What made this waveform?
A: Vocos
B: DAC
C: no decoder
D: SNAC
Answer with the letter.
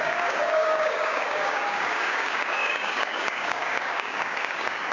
B